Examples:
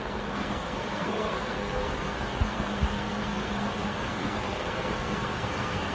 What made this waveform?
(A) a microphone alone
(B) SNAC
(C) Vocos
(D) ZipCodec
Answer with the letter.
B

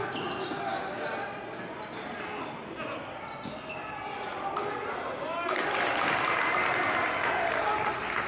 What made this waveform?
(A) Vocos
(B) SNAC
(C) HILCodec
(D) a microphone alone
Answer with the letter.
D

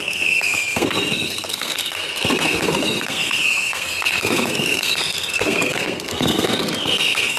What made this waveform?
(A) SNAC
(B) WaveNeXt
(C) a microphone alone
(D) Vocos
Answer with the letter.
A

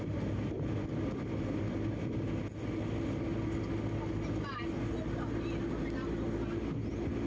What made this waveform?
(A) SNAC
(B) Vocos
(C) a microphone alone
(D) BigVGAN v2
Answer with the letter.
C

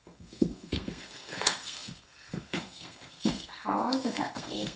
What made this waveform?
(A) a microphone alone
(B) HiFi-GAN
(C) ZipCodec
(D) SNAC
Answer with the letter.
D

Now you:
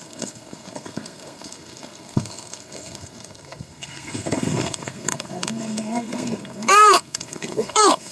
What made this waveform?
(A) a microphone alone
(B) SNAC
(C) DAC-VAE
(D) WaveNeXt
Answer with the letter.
B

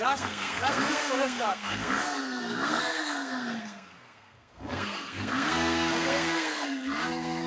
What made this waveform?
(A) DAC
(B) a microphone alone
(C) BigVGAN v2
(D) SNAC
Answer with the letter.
D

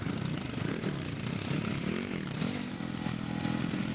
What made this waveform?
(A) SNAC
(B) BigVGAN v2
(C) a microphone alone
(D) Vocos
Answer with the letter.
C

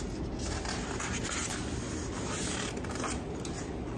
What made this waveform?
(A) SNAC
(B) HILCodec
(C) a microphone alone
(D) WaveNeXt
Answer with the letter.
C